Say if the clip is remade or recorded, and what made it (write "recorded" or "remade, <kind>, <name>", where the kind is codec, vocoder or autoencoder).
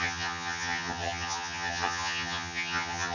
remade, vocoder, HiFi-GAN